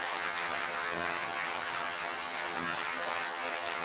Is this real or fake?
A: fake